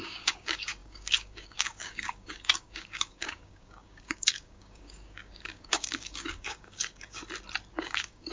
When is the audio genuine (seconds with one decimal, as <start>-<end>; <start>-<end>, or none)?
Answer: 7.2-7.7